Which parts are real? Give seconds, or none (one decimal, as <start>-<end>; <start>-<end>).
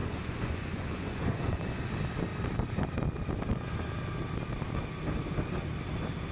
1.8-6.3